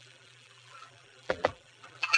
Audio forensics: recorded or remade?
remade